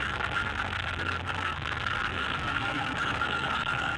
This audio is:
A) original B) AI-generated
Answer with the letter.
B